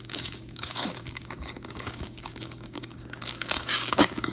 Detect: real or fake fake